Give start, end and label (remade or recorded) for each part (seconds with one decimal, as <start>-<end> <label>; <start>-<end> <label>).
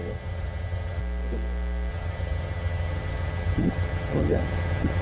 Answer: 0.0-1.0 remade; 1.0-1.9 recorded; 1.9-5.0 remade